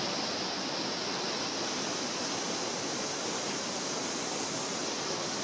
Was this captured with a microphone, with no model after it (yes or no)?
yes